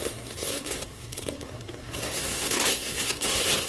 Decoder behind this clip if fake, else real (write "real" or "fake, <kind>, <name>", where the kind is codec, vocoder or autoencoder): fake, codec, SNAC